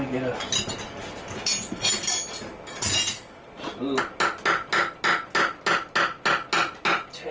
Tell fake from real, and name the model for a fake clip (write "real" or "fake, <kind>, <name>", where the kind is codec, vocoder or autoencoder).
real